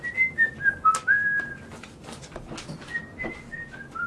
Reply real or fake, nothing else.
real